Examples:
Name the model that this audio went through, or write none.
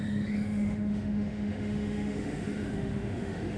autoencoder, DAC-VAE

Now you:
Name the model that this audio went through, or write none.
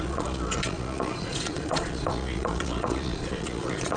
vocoder, Vocos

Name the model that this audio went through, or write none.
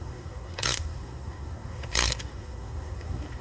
codec, SNAC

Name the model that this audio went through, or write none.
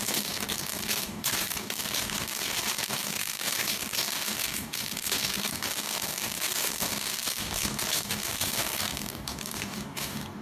codec, DAC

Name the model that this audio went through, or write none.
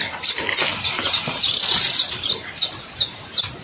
none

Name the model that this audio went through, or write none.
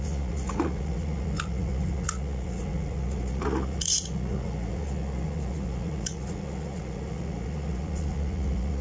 vocoder, Vocos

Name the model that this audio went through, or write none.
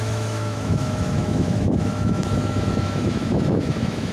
autoencoder, DAC-VAE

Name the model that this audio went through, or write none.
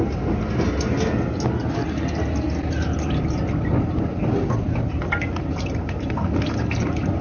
none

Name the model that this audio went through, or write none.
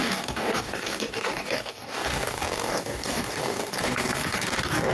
codec, DAC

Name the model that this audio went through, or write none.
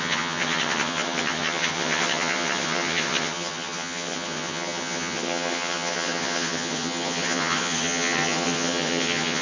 vocoder, HiFi-GAN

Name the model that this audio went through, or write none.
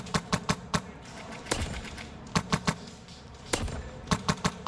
vocoder, BigVGAN v2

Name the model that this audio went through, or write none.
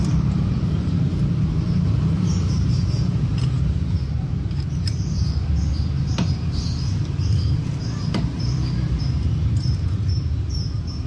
vocoder, BigVGAN v2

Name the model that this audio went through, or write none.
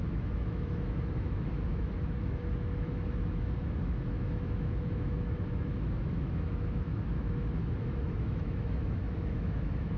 autoencoder, DAC-VAE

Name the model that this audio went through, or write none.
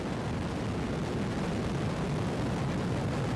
none